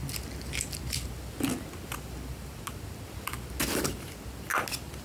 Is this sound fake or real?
real